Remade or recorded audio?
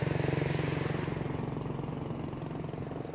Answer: recorded